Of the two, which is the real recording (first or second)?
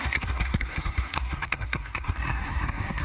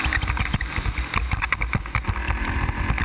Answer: second